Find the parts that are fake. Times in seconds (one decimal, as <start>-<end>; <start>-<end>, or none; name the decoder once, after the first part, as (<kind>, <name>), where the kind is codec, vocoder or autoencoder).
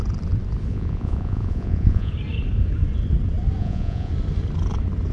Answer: 0.7-2.1 (vocoder, Vocos); 3.6-4.1